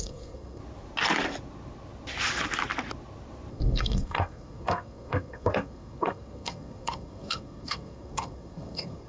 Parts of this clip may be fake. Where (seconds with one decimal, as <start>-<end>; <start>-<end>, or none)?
0.0-0.6; 3.5-9.1